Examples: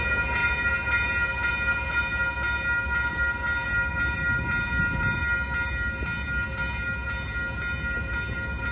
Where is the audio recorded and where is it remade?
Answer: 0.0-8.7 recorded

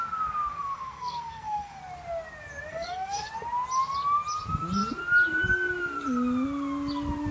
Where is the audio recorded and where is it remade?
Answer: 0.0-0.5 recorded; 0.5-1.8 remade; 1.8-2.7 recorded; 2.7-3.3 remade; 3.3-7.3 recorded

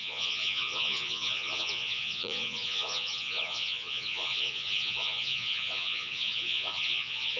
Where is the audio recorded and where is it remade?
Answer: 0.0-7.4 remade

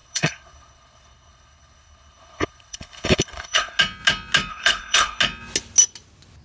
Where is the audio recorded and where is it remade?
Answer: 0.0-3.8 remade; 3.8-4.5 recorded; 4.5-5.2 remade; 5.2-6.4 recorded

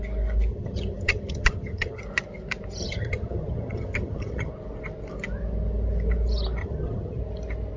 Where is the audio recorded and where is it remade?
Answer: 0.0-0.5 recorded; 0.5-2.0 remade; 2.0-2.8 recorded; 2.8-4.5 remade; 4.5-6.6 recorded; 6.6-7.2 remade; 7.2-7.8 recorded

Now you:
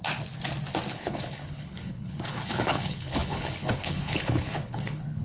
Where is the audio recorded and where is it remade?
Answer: 0.0-0.9 recorded; 0.9-5.2 remade

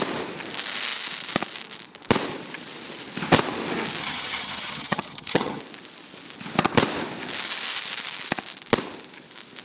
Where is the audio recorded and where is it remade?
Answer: 0.0-4.0 recorded; 4.0-5.6 remade; 5.6-9.6 recorded

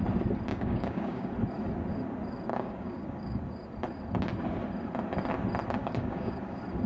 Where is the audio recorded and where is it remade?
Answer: 0.0-0.5 recorded; 0.5-1.3 remade; 1.3-2.5 recorded; 2.5-3.4 remade; 3.4-5.8 recorded; 5.8-6.4 remade; 6.4-6.9 recorded